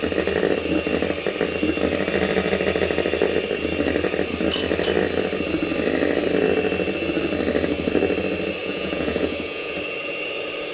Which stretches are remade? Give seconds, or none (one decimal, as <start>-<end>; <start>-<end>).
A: 8.6-9.7